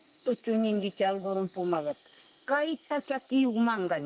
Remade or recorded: remade